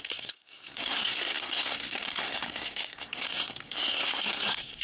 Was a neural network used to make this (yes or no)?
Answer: yes